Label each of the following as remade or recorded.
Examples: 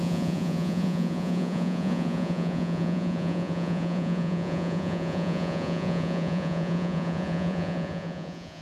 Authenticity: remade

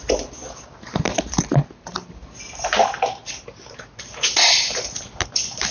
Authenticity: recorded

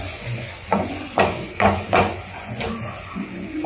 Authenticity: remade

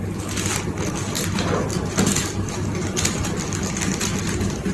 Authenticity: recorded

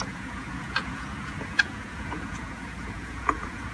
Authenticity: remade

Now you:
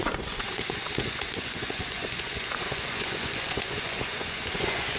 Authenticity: remade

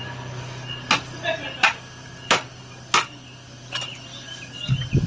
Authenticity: recorded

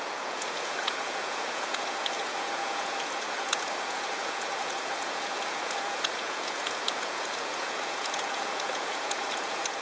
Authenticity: remade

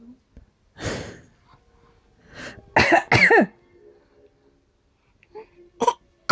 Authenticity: recorded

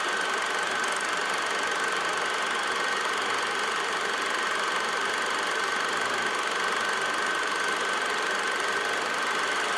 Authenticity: recorded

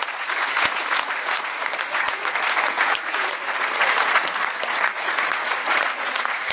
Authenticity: remade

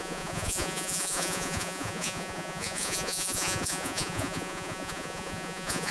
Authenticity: remade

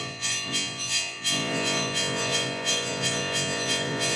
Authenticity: remade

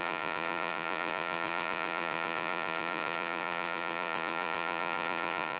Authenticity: remade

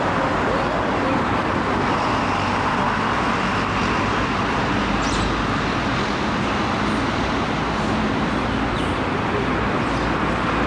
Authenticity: recorded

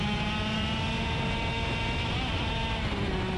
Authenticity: recorded